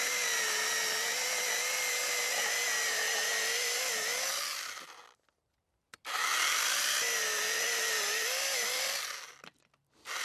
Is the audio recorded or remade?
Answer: recorded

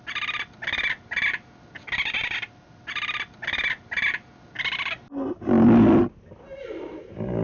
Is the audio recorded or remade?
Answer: recorded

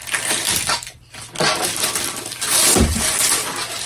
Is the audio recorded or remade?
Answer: remade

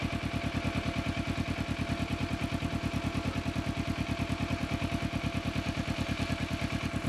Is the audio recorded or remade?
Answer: recorded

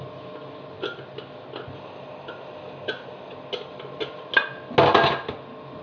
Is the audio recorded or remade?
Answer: recorded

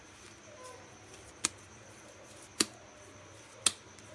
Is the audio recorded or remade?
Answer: recorded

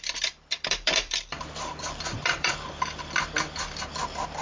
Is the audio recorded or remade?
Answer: remade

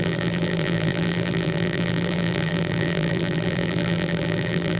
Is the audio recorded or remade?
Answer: remade